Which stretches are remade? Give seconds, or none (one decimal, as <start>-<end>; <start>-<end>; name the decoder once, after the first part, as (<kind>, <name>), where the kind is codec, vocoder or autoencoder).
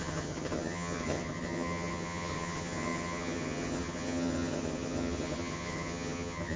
0.0-6.6 (vocoder, HiFi-GAN)